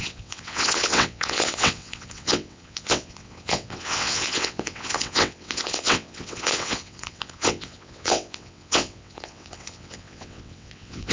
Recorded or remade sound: remade